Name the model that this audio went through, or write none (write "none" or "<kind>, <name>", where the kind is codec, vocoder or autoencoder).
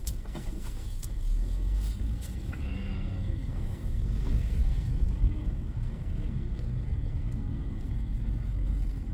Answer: codec, SNAC